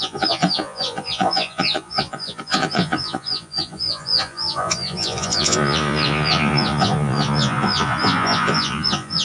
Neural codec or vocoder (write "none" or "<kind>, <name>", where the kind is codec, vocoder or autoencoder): vocoder, Vocos